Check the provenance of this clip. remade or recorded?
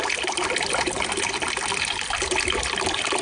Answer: recorded